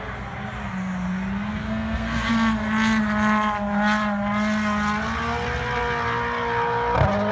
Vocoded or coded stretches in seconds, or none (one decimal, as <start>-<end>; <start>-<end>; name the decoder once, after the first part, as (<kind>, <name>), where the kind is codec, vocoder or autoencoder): 1.5-2.3 (codec, SNAC)